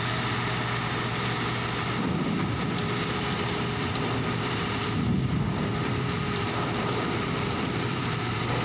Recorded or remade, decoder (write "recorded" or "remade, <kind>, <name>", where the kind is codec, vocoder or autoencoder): remade, vocoder, BigVGAN v2